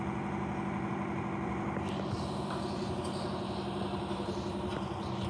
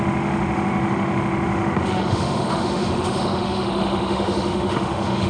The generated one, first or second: second